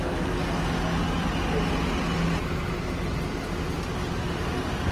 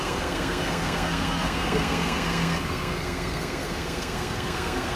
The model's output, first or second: second